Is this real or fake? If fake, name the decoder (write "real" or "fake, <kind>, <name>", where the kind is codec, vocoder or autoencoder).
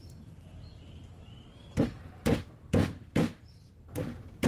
fake, vocoder, BigVGAN v2